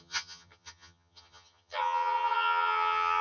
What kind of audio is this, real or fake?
fake